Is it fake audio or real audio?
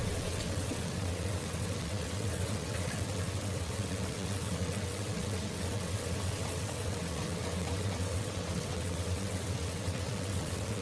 fake